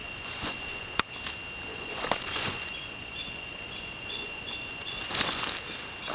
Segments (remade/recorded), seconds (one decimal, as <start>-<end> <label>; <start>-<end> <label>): 0.0-1.1 remade; 1.1-1.7 recorded; 1.7-5.4 remade; 5.4-6.1 recorded